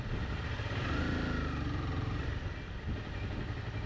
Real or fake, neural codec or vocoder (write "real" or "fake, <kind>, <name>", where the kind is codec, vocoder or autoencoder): real